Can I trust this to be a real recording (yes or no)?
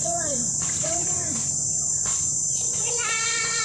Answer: no